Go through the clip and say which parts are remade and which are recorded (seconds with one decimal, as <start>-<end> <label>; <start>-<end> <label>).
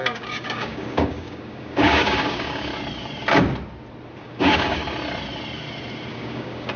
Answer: 0.0-2.7 remade; 2.7-4.2 recorded; 4.2-4.8 remade; 4.8-6.1 recorded; 6.1-6.8 remade